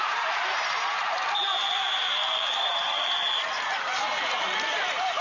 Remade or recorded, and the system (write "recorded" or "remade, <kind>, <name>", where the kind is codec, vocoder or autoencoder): remade, vocoder, BigVGAN v2